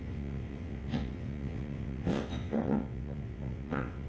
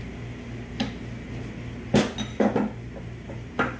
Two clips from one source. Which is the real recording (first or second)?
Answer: second